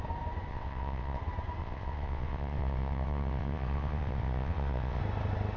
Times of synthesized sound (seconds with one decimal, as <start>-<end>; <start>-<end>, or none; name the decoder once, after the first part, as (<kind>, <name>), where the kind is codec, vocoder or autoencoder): 0.5-1.2 (vocoder, WaveNeXt); 1.6-5.0